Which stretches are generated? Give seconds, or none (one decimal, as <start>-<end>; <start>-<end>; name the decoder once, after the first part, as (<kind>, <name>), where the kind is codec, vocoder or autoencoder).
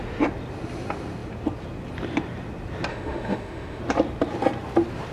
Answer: 2.9-3.8 (autoencoder, DAC-VAE)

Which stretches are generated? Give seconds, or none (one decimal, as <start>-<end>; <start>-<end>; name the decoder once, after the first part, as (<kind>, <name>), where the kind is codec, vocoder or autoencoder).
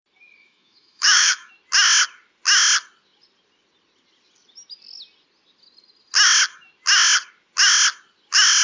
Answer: 0.4-1.5 (autoencoder, DAC-VAE)